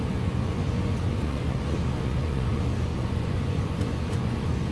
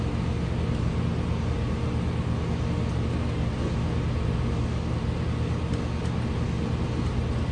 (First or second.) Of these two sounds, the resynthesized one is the first